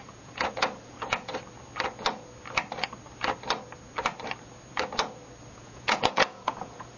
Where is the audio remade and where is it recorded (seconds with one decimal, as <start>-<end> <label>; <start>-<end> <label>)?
0.0-1.3 remade; 1.3-5.5 recorded; 5.5-7.0 remade